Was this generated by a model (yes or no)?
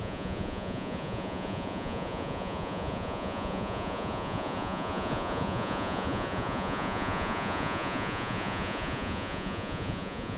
yes